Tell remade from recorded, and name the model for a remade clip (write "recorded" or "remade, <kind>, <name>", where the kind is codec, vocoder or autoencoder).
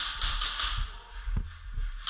recorded